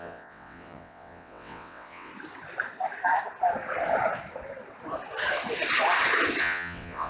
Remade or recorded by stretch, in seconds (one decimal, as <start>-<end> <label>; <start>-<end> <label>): 0.0-2.1 remade; 2.1-6.4 recorded; 6.4-7.1 remade